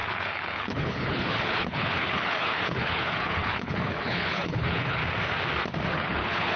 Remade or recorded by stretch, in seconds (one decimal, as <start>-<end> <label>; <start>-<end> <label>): 0.0-5.0 remade; 5.0-5.9 recorded; 5.9-6.6 remade